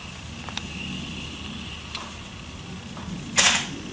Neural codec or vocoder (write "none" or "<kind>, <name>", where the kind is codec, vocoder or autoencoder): none